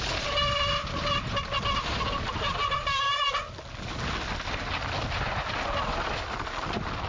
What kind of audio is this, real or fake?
real